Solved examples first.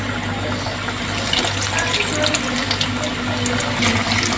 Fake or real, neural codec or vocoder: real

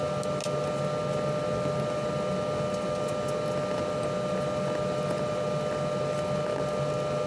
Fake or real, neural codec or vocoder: real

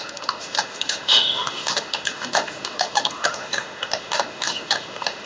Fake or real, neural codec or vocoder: fake, autoencoder, DAC-VAE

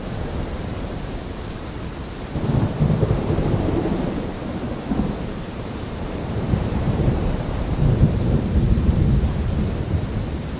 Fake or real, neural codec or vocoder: fake, vocoder, BigVGAN v2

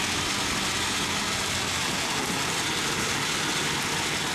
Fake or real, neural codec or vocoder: real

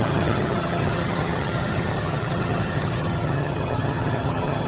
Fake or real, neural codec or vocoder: fake, vocoder, HiFi-GAN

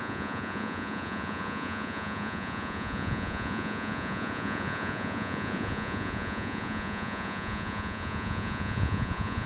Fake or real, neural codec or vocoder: fake, vocoder, Vocos